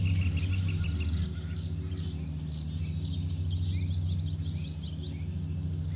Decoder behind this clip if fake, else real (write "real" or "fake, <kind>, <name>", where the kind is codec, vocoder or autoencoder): real